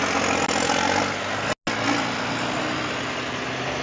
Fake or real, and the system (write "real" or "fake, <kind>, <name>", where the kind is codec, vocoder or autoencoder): real